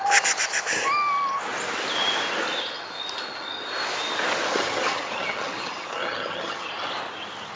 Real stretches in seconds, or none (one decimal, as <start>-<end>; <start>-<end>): 0.0-4.5; 6.7-7.6